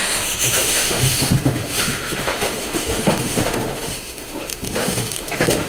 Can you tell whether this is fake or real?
fake